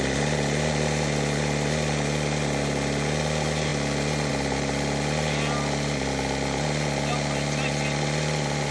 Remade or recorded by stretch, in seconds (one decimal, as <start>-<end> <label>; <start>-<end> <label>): 0.0-8.7 recorded